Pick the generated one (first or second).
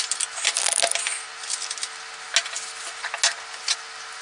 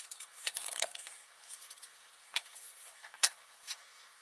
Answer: second